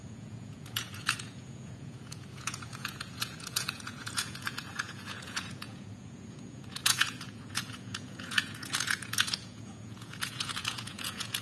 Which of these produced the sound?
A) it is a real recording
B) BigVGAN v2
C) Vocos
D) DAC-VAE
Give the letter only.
C